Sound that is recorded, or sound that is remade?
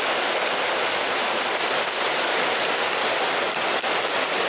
recorded